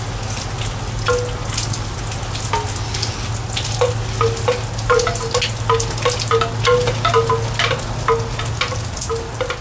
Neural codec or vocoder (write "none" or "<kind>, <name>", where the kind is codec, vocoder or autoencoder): none